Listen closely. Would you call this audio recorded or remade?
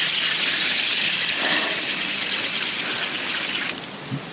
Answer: recorded